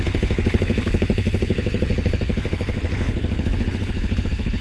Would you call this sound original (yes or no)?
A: no